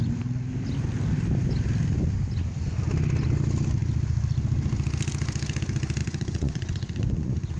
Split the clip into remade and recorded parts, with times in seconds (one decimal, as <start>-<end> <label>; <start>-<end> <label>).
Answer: 0.0-6.0 recorded; 6.0-7.6 remade